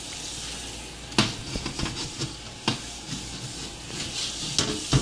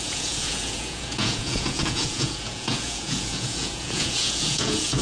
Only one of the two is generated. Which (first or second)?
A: second